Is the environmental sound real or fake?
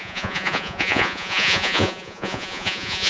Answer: fake